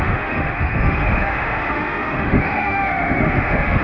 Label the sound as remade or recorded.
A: remade